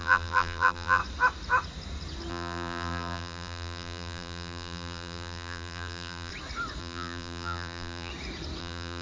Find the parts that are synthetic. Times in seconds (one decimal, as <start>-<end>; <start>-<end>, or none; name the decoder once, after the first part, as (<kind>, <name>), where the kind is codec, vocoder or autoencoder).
0.0-1.0 (vocoder, BigVGAN v2); 2.3-6.3; 6.8-8.1; 8.6-9.0